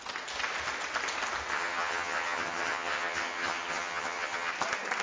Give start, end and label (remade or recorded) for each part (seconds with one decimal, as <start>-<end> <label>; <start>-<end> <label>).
0.0-1.5 recorded; 1.5-4.5 remade; 4.5-5.0 recorded